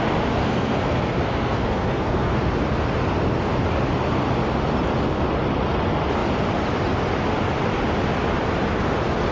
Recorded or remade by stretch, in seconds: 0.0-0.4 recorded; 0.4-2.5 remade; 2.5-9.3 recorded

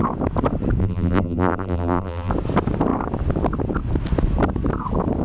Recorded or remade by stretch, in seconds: 0.0-0.8 recorded; 0.8-2.3 remade; 2.3-5.2 recorded